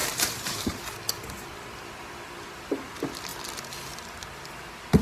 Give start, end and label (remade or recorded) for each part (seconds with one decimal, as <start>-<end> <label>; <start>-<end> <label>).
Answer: 0.0-0.8 remade; 0.8-5.0 recorded